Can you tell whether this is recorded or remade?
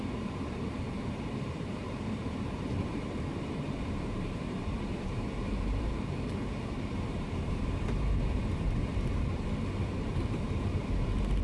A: remade